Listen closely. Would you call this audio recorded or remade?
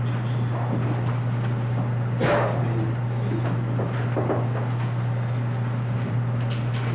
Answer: recorded